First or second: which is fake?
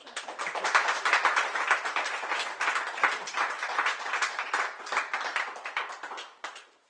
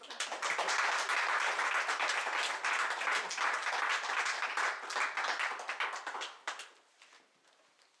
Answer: first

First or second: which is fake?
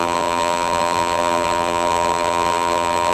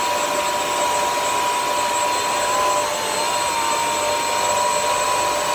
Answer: first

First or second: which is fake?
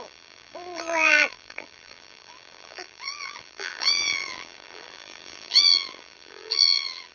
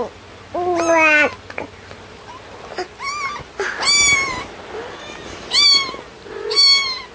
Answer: first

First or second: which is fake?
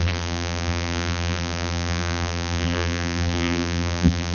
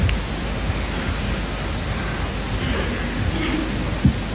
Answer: first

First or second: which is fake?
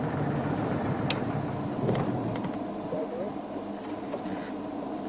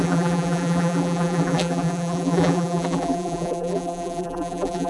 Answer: second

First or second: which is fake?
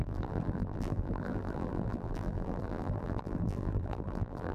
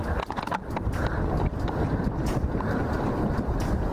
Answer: first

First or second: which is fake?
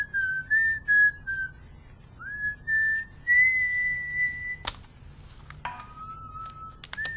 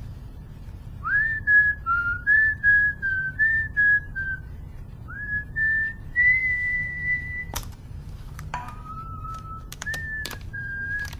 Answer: second